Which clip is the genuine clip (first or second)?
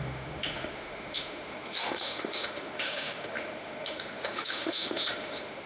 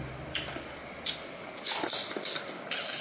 second